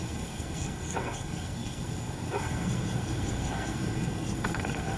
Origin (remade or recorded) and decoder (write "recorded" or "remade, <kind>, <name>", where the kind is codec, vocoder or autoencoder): remade, codec, SNAC